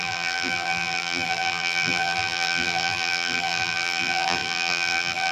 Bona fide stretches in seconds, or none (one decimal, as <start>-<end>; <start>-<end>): none